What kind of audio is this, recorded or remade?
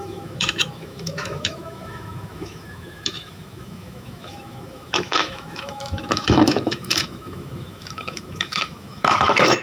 remade